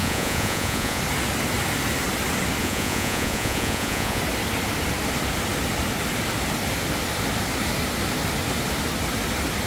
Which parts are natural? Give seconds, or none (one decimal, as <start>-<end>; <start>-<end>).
1.0-2.6; 4.2-9.7

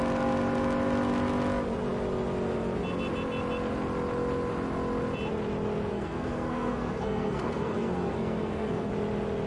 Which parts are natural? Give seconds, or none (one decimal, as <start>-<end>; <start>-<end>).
0.0-5.9; 8.9-9.5